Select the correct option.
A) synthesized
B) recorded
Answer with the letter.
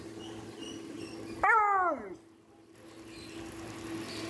B